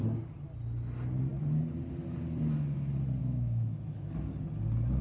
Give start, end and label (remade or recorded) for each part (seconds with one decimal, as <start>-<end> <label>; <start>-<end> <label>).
0.0-3.2 recorded; 3.2-4.1 remade; 4.1-5.0 recorded